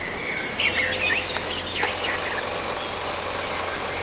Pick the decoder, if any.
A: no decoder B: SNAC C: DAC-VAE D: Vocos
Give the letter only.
A